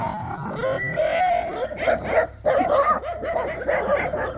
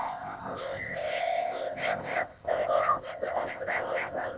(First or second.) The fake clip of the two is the second